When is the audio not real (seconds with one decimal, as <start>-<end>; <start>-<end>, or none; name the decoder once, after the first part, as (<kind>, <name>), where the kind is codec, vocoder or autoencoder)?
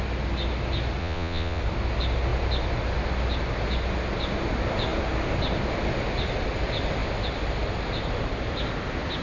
1.0-1.6 (vocoder, Vocos)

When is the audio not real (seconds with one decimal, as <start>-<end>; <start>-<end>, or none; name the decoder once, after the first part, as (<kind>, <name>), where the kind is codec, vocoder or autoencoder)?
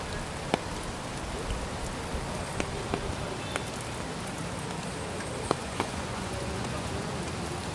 5.6-7.1 (vocoder, Vocos)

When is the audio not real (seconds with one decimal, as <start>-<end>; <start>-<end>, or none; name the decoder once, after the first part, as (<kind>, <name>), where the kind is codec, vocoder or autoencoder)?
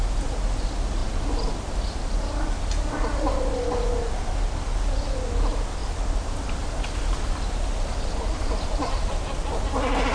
none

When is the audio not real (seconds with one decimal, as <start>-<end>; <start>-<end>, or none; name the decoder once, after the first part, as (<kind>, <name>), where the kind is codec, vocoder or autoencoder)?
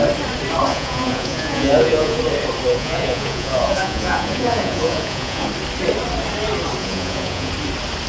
0.7-2.2 (vocoder, Vocos); 2.7-5.5; 6.8-7.5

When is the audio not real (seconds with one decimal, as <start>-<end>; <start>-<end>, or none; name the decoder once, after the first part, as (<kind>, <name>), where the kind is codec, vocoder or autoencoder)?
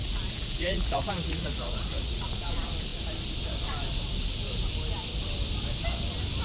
0.0-2.5 (vocoder, Vocos)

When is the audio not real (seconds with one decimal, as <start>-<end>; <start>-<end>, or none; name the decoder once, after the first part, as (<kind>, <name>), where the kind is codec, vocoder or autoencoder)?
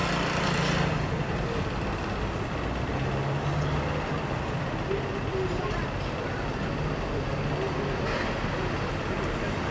none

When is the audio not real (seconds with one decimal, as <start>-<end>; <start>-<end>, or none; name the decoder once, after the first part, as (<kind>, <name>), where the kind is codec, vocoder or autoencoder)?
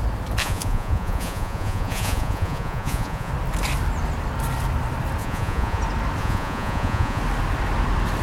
0.4-3.3 (vocoder, Vocos); 5.2-5.8; 6.2-7.2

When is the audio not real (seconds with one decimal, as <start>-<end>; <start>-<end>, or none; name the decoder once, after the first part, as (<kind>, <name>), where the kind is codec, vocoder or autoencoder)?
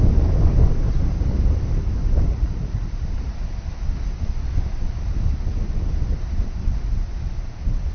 2.3-3.0 (vocoder, Vocos)